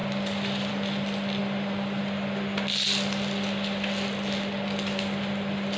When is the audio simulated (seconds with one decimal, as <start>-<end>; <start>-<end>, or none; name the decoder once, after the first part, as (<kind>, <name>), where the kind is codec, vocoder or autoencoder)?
none